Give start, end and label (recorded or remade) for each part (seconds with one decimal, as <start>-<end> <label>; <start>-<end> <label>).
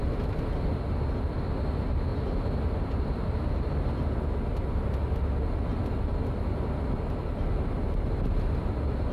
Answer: 0.0-9.1 recorded